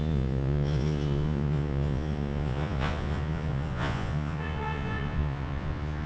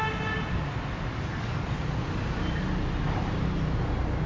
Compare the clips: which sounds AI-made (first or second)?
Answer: first